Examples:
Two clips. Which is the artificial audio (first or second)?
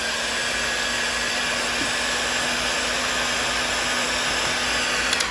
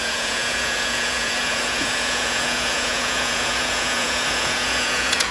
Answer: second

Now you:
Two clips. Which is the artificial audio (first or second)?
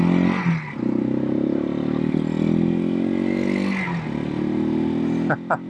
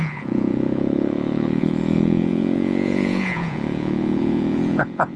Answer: second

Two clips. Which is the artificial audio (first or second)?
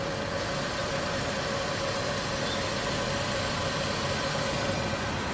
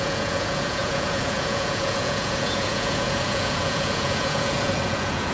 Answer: second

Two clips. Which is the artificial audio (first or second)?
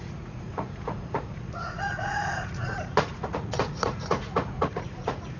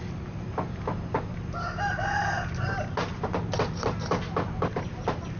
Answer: first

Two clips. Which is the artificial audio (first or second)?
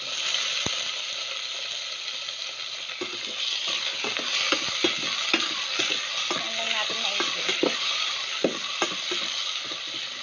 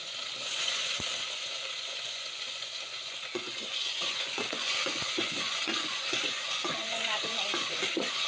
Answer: second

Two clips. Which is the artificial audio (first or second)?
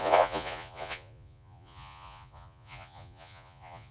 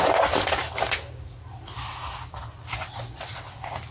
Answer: first